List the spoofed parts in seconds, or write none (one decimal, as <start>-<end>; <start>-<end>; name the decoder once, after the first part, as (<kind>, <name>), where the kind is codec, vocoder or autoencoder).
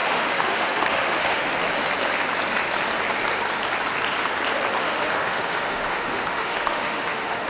0.0-1.4 (autoencoder, DAC-VAE); 4.8-7.5